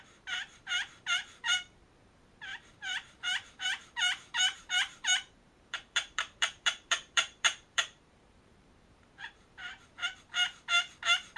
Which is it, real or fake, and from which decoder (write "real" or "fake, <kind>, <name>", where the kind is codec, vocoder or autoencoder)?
fake, vocoder, BigVGAN v2